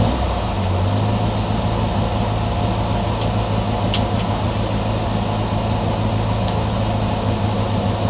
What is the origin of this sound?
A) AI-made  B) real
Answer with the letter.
B